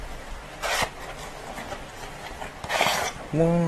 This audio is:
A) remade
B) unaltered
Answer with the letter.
B